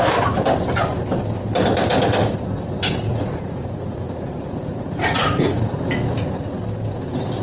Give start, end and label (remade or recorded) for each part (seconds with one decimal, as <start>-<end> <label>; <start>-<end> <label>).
0.0-3.1 recorded; 3.1-5.6 remade; 5.6-7.4 recorded